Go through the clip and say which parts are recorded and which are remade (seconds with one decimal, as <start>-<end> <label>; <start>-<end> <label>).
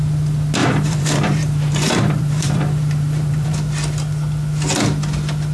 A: 0.0-0.6 recorded; 0.6-3.6 remade; 3.6-5.5 recorded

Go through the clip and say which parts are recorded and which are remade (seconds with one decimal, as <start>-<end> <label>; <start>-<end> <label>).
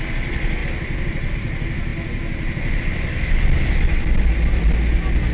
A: 0.0-0.6 recorded; 0.6-1.3 remade; 1.3-5.3 recorded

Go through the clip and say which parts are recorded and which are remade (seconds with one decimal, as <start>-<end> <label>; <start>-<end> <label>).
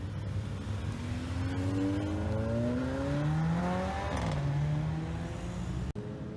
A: 0.0-6.4 recorded